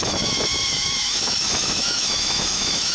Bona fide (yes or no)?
no